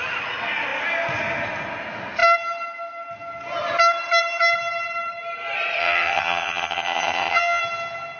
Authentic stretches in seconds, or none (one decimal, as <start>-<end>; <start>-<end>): 0.0-5.8; 7.6-8.2